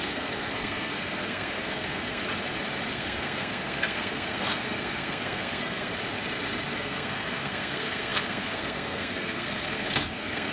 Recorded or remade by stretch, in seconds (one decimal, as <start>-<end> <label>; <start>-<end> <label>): 0.0-2.2 remade; 2.2-2.9 recorded; 2.9-5.9 remade; 5.9-6.8 recorded; 6.8-10.5 remade